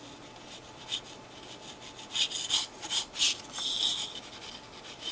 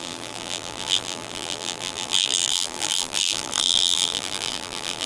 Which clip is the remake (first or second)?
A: second